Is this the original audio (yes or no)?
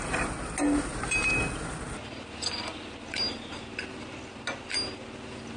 yes